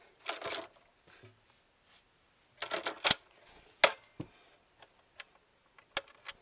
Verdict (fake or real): real